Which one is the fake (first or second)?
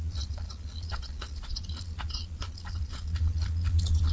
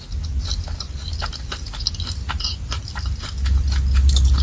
first